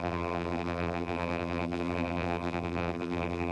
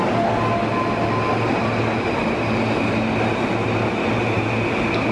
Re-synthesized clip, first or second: first